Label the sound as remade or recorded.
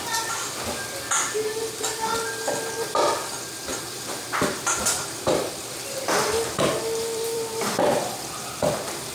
remade